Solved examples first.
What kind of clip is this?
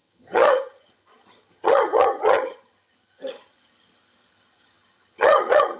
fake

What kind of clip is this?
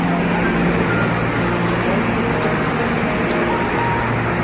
real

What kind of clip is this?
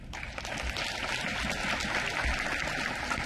real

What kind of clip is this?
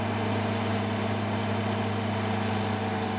real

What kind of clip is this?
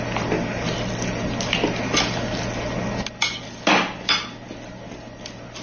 real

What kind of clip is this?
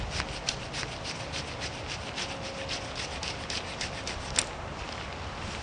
real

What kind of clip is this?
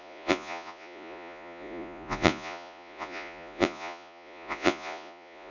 fake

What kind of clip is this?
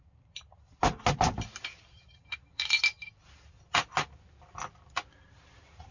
real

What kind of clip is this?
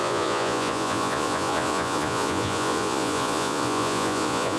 fake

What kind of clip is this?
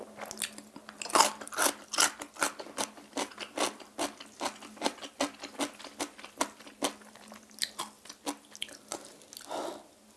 real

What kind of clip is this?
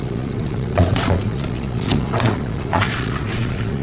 fake